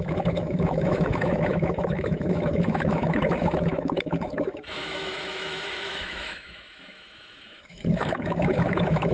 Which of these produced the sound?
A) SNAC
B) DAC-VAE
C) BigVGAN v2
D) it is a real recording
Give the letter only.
B